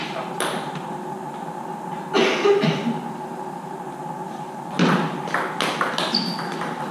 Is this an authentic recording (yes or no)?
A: yes